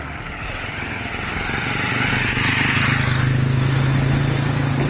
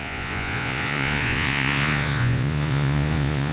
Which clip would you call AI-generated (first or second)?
second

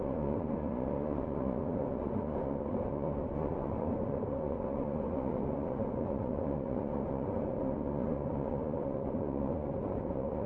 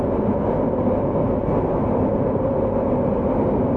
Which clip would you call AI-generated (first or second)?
first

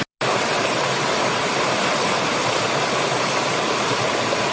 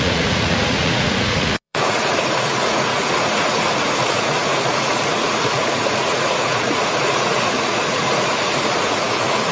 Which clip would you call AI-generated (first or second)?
second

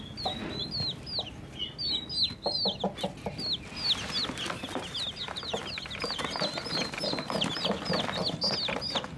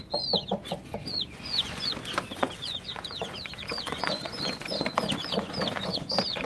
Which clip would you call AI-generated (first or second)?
second